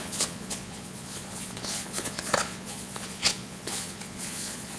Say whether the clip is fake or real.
fake